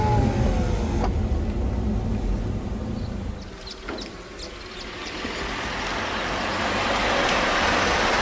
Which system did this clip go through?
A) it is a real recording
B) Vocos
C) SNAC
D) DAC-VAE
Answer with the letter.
A